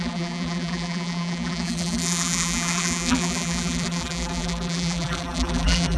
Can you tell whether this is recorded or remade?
remade